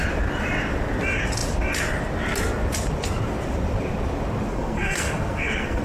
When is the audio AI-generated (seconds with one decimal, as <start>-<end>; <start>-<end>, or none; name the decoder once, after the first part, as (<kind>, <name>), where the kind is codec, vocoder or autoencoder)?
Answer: 4.5-5.8 (codec, SNAC)